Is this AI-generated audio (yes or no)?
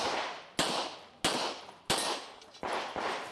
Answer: no